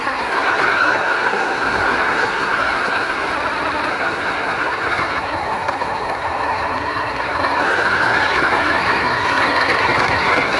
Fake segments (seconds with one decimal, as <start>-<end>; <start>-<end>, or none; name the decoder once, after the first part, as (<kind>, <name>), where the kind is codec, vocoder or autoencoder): 0.0-3.3 (codec, SNAC); 3.9-10.6